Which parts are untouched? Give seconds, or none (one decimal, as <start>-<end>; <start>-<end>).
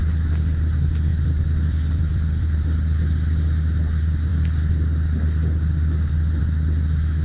0.0-1.1; 2.6-7.2